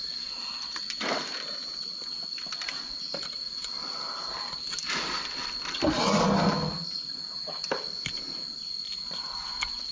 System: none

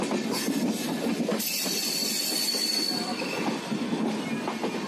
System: none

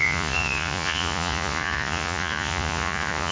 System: vocoder, Vocos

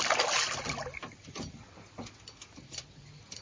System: none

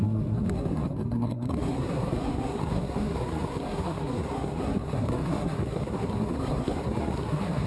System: codec, SNAC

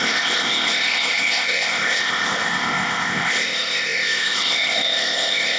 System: codec, ZipCodec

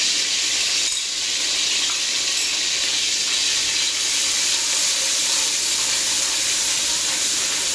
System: none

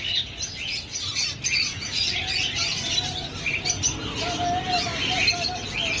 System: none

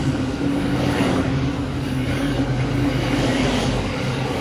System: codec, DAC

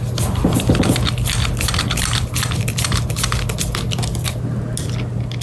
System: none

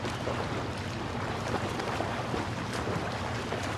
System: none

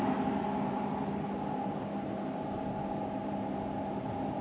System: none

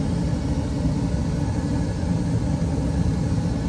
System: none